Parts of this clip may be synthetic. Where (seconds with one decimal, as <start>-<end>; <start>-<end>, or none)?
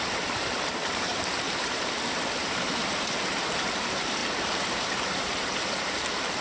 0.0-4.2; 4.7-6.4